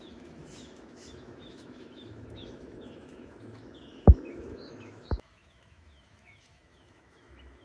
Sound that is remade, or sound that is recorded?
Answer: remade